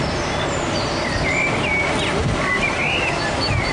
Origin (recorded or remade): recorded